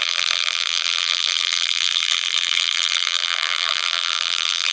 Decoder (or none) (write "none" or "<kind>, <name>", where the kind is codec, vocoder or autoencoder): vocoder, BigVGAN v2